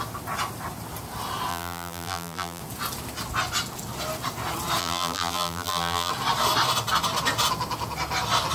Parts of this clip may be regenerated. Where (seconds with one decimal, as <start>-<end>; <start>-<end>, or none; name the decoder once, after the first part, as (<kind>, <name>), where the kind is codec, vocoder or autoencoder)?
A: 1.5-2.6 (vocoder, BigVGAN v2); 4.8-6.1